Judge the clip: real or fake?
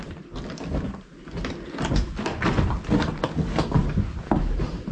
real